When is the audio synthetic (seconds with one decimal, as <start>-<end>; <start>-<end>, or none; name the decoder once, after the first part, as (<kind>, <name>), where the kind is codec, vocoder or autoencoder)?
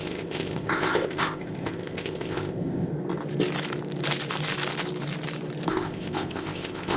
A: 0.0-2.9 (codec, ZipCodec); 5.7-7.0